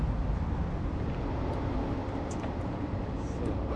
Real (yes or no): yes